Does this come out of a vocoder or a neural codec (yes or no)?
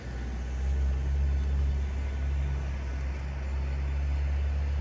no